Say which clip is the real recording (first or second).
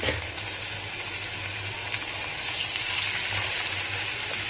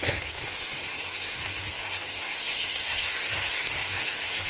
first